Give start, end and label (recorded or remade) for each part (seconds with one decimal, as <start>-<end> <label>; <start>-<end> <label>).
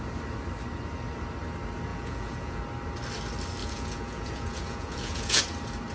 0.0-1.9 recorded; 1.9-2.6 remade; 2.6-3.6 recorded; 3.6-5.4 remade; 5.4-5.9 recorded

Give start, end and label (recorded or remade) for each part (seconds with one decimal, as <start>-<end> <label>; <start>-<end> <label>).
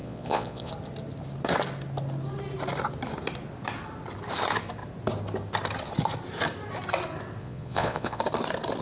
0.0-0.7 remade; 0.7-7.4 recorded; 7.4-8.2 remade; 8.2-8.8 recorded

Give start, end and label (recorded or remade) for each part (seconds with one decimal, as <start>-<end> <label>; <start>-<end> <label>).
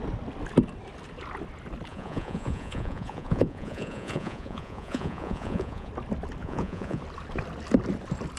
0.0-1.9 recorded; 1.9-5.9 remade; 5.9-6.4 recorded; 6.4-7.0 remade; 7.0-8.4 recorded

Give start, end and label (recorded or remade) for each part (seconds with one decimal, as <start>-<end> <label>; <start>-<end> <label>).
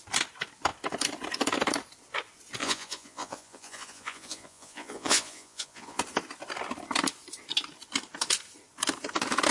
0.0-2.6 recorded; 2.6-6.0 remade; 6.0-9.5 recorded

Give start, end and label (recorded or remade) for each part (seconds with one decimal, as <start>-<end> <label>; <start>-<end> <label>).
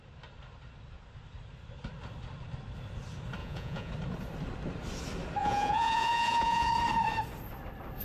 0.0-3.4 recorded; 3.4-3.9 remade; 3.9-5.4 recorded; 5.4-6.7 remade; 6.7-8.0 recorded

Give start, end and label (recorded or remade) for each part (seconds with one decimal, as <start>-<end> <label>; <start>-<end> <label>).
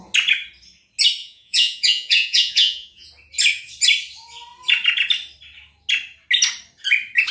0.0-1.2 recorded; 1.2-3.1 remade; 3.1-7.3 recorded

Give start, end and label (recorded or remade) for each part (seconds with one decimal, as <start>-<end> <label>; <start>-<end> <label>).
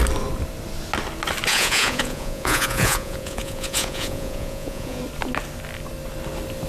0.0-1.5 recorded; 1.5-5.0 remade; 5.0-6.7 recorded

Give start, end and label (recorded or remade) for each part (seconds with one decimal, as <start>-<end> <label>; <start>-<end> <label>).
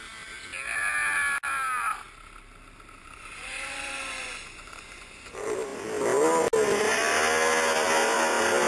0.0-3.0 recorded; 3.0-5.3 remade; 5.3-8.7 recorded